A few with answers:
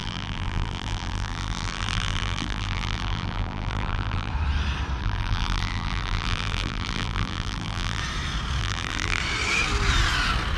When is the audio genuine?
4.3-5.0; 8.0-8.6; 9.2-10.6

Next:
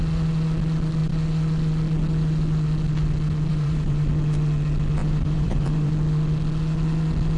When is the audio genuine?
0.0-3.5; 4.1-5.0; 5.9-7.4

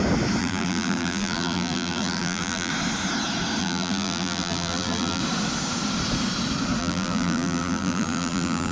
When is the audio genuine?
0.0-0.4; 2.7-3.6; 5.2-6.8

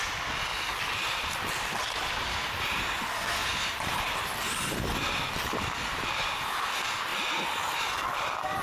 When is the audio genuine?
0.0-0.5; 2.6-3.4; 4.2-8.6